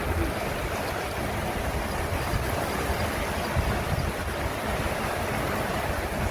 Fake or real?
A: real